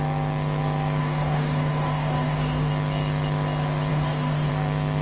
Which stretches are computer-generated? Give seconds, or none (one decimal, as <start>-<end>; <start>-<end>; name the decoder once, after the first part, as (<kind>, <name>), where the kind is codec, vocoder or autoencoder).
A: 1.0-2.7 (codec, DAC); 3.9-4.5